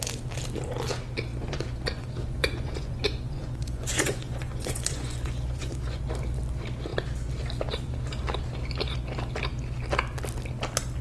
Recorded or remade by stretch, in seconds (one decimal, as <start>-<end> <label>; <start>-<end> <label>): 0.0-1.3 recorded; 1.3-6.0 remade; 6.0-11.0 recorded